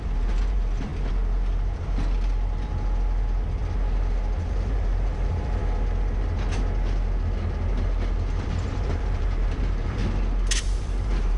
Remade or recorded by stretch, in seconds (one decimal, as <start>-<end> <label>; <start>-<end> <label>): 0.0-0.9 remade; 0.9-4.4 recorded; 4.4-5.6 remade; 5.6-8.4 recorded; 8.4-10.0 remade; 10.0-10.6 recorded; 10.6-11.4 remade